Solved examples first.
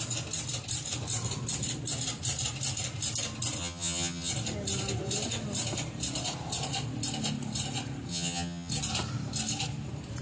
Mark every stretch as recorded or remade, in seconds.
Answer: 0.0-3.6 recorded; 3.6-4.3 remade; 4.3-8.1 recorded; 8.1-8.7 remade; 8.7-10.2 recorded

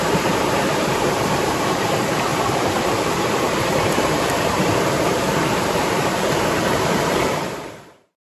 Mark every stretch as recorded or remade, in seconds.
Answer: 0.0-8.2 remade